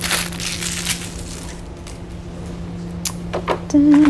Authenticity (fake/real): real